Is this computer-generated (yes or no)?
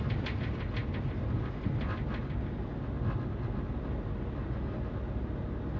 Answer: no